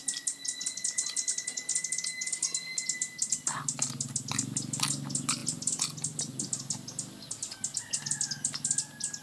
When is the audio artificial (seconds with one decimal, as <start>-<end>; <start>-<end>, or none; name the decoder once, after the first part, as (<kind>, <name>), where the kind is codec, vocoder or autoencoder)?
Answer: none